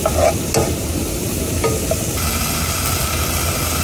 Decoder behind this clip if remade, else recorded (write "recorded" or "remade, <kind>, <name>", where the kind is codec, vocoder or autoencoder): recorded